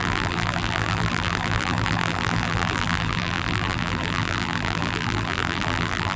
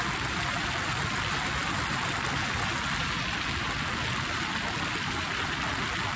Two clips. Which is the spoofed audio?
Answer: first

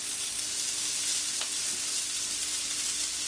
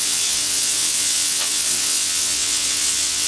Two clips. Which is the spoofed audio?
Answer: second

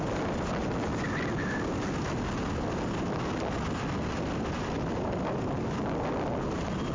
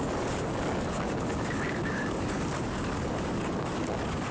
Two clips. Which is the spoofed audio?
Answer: second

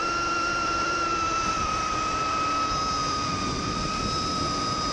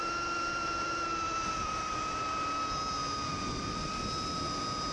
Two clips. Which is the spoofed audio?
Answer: first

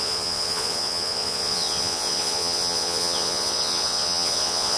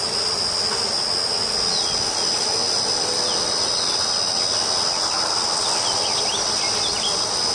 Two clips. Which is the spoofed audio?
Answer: first